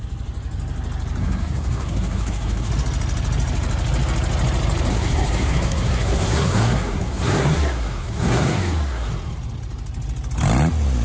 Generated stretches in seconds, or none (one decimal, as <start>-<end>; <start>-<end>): 1.2-2.7; 4.9-9.1